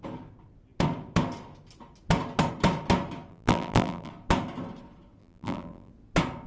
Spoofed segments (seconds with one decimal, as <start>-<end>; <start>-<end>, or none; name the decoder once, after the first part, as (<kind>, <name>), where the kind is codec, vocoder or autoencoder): 3.3-4.1 (vocoder, BigVGAN v2); 5.2-5.9